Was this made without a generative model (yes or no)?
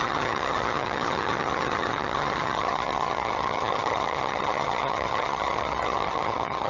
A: no